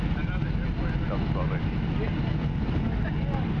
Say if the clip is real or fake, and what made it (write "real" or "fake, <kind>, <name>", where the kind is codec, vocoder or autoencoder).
real